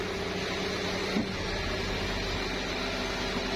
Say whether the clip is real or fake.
real